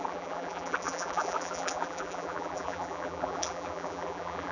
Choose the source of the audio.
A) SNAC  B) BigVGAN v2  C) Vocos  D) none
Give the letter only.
B